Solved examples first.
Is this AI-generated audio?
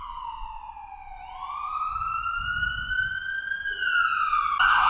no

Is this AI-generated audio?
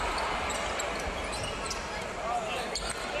no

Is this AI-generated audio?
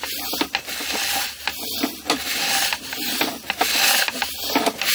no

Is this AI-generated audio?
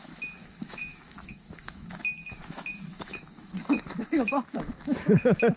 yes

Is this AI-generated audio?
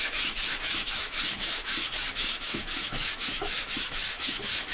yes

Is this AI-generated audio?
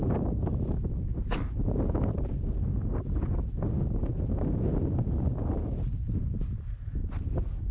no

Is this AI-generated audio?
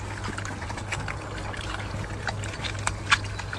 no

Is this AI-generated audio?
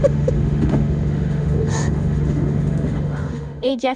yes